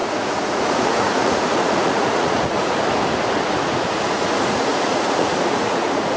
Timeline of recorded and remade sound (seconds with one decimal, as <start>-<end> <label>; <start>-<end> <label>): 0.0-2.7 remade; 2.7-3.6 recorded; 3.6-6.2 remade

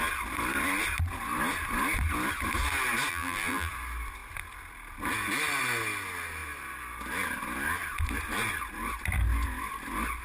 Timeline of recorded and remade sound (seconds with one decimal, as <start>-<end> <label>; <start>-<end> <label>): 0.0-3.1 recorded; 3.1-3.7 remade; 3.7-10.2 recorded

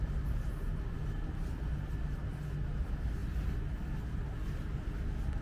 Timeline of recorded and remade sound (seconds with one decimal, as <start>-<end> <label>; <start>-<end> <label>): 0.0-5.4 recorded

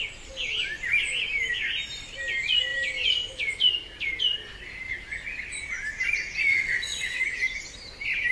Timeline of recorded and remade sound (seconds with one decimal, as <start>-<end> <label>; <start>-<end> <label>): 0.0-6.5 recorded; 6.5-7.2 remade; 7.2-8.3 recorded